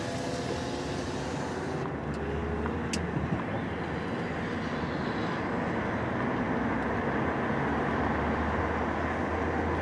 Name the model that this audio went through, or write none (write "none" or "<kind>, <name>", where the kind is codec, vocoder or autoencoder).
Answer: none